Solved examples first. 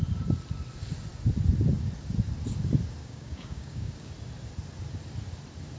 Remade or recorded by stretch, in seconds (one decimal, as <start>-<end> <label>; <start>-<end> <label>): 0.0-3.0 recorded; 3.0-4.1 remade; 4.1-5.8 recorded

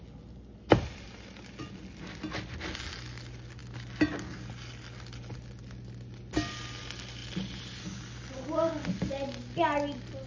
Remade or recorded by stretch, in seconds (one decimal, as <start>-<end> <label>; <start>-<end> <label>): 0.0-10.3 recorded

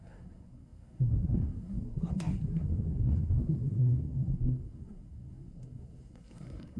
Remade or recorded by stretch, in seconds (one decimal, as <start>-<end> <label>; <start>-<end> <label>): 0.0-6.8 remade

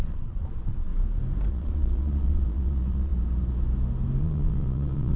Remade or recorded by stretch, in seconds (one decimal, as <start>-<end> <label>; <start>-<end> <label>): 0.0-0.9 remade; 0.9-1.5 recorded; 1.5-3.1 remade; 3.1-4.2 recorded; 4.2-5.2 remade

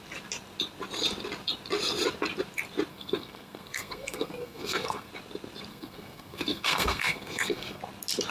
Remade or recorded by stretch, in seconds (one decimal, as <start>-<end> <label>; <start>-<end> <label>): 0.0-2.9 recorded; 2.9-5.1 remade; 5.1-5.7 recorded; 5.7-7.8 remade; 7.8-8.3 recorded